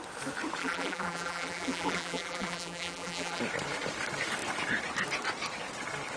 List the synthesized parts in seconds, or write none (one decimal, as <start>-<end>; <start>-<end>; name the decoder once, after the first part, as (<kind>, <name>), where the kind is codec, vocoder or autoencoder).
0.6-3.4 (vocoder, BigVGAN v2)